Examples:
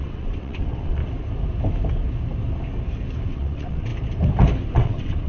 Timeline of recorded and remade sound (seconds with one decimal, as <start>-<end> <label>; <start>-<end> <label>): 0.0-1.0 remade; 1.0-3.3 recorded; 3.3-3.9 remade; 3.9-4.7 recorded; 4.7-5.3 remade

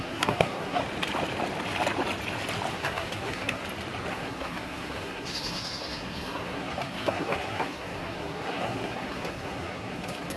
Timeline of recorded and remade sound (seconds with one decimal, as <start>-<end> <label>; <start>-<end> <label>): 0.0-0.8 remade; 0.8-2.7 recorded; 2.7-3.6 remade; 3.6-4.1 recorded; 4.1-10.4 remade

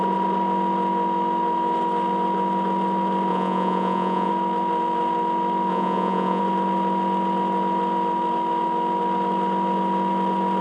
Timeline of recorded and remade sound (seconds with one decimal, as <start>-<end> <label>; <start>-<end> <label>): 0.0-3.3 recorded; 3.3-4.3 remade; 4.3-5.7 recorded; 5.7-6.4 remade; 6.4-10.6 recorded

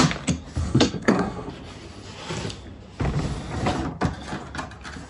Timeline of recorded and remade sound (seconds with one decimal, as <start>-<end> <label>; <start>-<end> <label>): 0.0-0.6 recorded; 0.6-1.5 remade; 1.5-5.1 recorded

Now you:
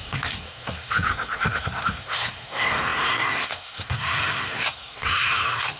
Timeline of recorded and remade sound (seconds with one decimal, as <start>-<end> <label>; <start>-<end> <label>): 0.0-5.8 remade